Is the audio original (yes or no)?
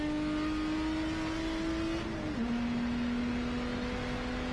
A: yes